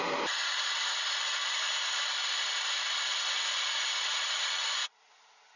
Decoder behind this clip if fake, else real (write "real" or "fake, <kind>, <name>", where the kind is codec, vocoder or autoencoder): real